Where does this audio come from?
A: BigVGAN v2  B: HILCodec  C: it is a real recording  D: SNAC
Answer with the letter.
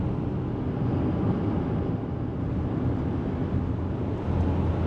C